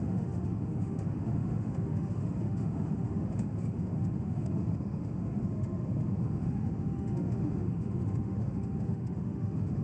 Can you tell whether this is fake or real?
fake